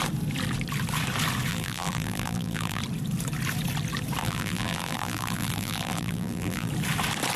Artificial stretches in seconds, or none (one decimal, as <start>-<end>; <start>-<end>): 1.5-2.8; 4.2-6.7